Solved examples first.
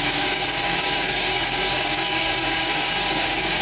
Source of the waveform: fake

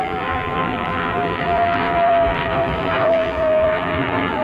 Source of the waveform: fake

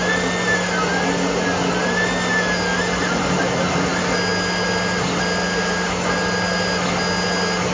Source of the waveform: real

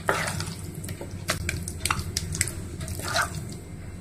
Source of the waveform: real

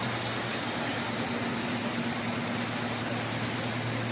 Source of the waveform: real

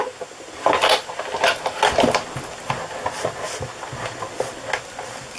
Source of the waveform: real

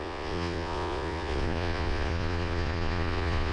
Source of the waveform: fake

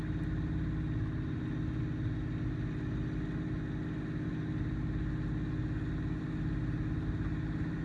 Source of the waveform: real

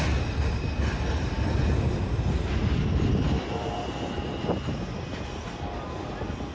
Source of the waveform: real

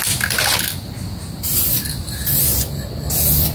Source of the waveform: real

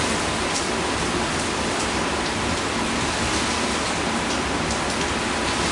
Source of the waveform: real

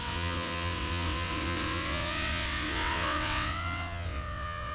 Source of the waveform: fake